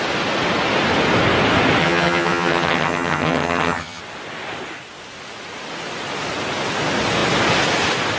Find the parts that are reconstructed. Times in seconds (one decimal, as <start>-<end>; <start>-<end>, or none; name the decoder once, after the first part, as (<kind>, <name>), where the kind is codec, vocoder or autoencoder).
1.8-4.0 (vocoder, HiFi-GAN)